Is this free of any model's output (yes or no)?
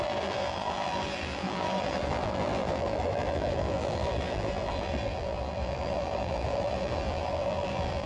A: no